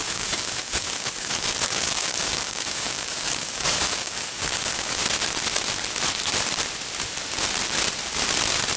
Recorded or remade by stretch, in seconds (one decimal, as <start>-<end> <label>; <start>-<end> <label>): 0.0-5.0 remade; 5.0-8.8 recorded